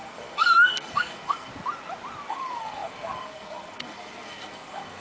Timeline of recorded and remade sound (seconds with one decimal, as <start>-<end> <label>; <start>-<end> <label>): 0.0-1.5 remade; 1.5-2.3 recorded; 2.3-5.0 remade